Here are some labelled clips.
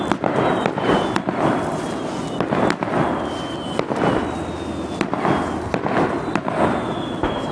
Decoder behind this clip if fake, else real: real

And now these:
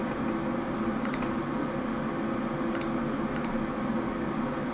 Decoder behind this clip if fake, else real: real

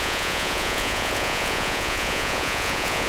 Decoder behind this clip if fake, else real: fake, vocoder, Vocos